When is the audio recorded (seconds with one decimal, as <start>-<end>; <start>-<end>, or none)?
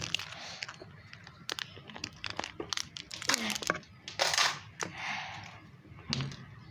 0.0-6.7